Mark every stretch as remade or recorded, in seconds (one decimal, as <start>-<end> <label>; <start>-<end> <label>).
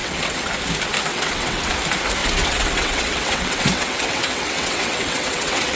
0.0-0.5 remade; 0.5-1.1 recorded; 1.1-1.7 remade; 1.7-2.2 recorded; 2.2-5.8 remade